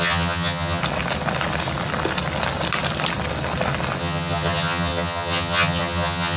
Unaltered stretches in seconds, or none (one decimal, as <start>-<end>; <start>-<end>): 0.8-4.0